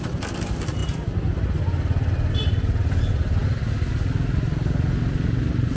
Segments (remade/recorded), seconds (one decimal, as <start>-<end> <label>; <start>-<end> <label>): 0.0-5.8 recorded